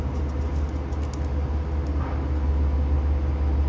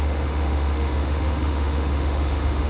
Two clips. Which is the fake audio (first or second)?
second